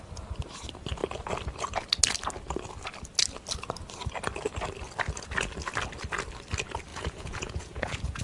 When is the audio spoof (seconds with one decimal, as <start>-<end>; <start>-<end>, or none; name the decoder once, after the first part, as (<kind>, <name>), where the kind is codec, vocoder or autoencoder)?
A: 6.9-8.2 (vocoder, Vocos)